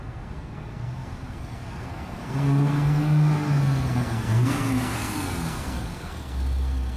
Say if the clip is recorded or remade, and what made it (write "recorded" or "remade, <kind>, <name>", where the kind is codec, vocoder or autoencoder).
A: remade, codec, SNAC